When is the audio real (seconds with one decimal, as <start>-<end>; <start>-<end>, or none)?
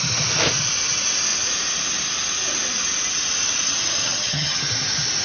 0.0-4.0; 4.6-5.2